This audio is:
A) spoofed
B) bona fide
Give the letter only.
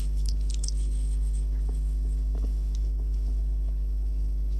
A